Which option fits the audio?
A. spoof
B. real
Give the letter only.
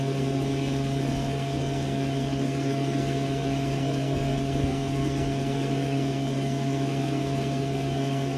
A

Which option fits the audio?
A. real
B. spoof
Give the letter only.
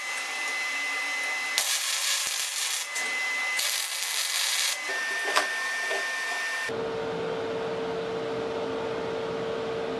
A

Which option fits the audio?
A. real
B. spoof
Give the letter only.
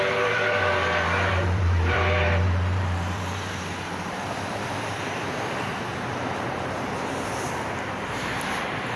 B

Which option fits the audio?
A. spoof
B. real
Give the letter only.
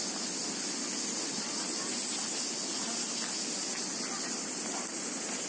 B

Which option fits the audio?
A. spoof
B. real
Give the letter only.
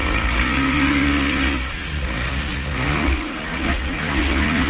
A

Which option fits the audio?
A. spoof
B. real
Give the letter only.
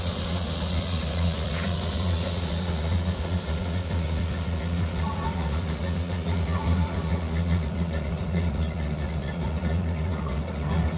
A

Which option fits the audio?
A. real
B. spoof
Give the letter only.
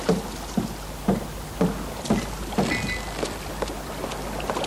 A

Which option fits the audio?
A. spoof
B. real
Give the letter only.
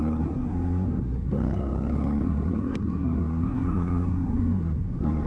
A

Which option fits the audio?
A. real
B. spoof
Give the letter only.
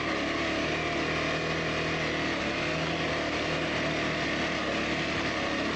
A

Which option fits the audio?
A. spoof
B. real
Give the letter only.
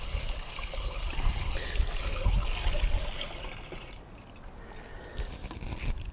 B